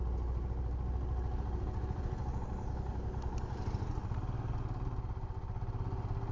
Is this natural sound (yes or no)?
yes